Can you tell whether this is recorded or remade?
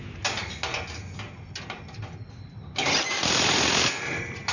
recorded